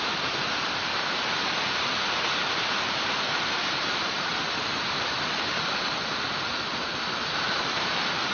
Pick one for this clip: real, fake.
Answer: fake